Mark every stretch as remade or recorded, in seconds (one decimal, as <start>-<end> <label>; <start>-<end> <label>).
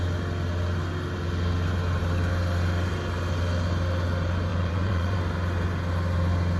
0.0-4.5 recorded; 4.5-5.2 remade; 5.2-6.6 recorded